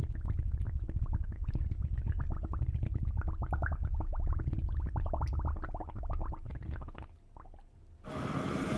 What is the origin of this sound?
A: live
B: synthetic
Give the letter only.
A